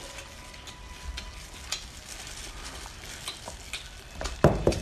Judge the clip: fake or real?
real